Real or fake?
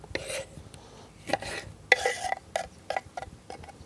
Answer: real